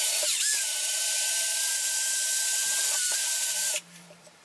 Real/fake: fake